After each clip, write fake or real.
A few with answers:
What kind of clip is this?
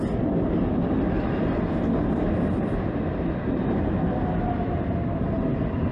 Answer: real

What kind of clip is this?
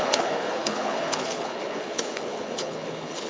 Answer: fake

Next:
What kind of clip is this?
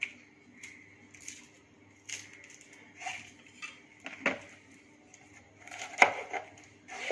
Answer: real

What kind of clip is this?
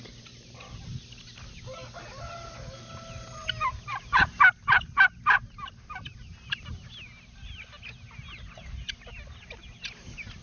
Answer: real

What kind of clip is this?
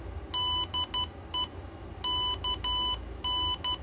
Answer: real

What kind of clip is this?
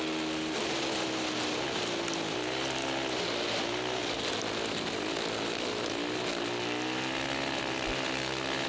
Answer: real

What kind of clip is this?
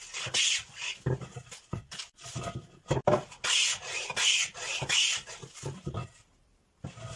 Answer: real